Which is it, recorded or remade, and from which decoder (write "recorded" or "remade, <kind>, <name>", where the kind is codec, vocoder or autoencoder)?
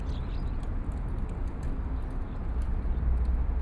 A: recorded